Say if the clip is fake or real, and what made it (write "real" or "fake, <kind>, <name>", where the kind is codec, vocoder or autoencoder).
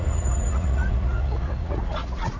fake, vocoder, Vocos